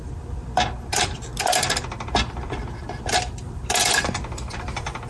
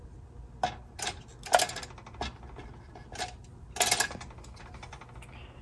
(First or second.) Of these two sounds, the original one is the second